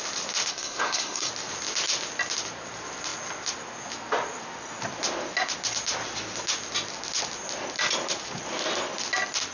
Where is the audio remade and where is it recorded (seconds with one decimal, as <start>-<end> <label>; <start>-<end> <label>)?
0.0-0.5 recorded; 0.5-1.3 remade; 1.3-9.5 recorded